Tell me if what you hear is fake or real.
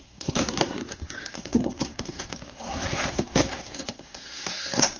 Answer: fake